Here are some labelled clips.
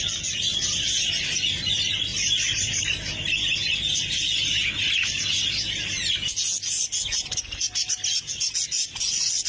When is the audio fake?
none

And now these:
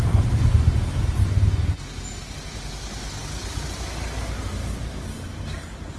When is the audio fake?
none

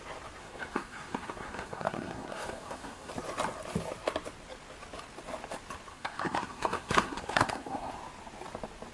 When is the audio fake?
0.4-3.1 (codec, SNAC); 5.9-7.9